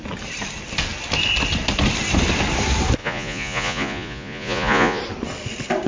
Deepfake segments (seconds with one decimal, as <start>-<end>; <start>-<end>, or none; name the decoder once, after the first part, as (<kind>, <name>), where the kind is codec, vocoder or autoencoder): 3.0-5.0 (vocoder, Vocos)